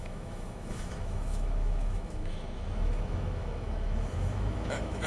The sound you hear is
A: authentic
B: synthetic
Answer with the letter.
B